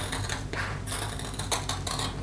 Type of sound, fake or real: real